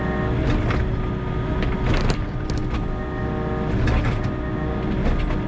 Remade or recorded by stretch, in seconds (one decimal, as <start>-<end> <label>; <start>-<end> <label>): 0.0-5.5 recorded